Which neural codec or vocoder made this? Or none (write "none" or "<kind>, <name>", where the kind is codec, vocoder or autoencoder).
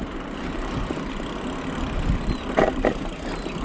none